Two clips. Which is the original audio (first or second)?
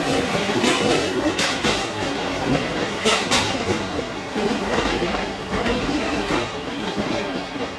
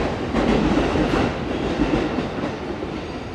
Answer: second